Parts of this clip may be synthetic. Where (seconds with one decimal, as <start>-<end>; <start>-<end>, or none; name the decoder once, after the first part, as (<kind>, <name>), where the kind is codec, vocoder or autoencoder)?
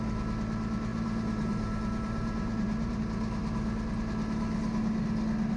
0.9-3.0 (vocoder, BigVGAN v2)